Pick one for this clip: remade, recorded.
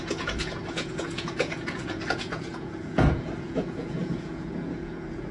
remade